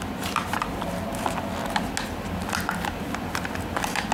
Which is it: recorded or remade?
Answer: recorded